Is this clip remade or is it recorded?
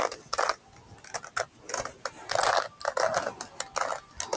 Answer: recorded